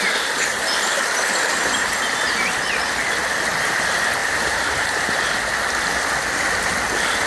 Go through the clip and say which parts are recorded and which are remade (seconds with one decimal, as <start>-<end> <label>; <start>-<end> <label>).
0.0-4.2 recorded; 4.2-5.0 remade; 5.0-7.3 recorded